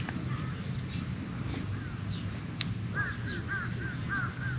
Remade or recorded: recorded